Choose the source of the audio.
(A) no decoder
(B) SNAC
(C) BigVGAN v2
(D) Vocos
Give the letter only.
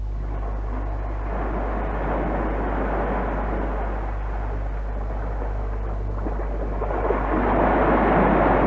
A